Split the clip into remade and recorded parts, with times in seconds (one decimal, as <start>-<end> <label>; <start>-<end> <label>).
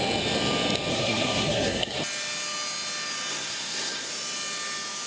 0.0-0.9 recorded; 0.9-2.0 remade; 2.0-3.3 recorded; 3.3-4.1 remade; 4.1-5.1 recorded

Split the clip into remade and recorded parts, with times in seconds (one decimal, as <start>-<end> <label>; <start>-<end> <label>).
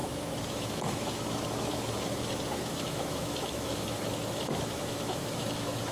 0.0-5.9 remade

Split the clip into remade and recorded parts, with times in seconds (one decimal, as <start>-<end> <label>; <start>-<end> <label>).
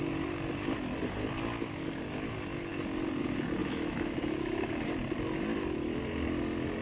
0.0-3.6 recorded; 3.6-4.7 remade; 4.7-6.8 recorded